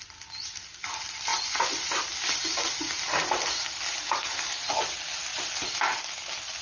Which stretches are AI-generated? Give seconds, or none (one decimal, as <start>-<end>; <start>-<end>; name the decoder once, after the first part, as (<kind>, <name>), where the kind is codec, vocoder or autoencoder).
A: none